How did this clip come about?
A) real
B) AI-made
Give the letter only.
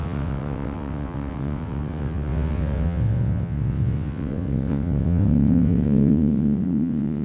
B